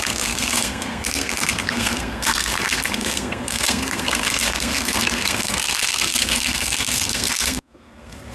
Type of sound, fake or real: fake